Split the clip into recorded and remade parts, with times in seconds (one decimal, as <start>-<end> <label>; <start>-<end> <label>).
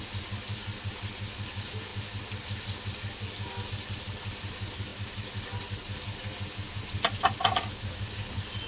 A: 0.0-8.7 recorded